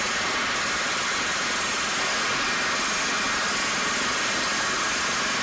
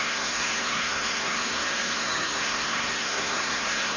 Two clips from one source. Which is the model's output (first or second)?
second